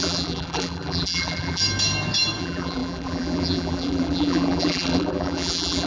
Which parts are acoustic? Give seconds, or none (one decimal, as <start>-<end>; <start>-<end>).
1.6-2.4